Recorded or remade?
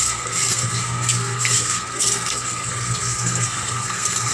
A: remade